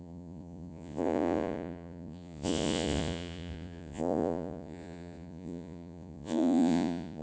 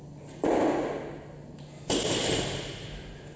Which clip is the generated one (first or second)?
first